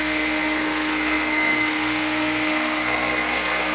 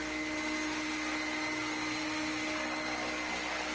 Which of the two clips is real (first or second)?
second